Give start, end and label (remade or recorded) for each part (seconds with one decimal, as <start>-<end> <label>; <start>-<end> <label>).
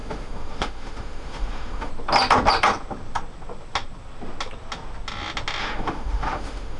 0.0-1.9 remade; 1.9-5.6 recorded; 5.6-6.8 remade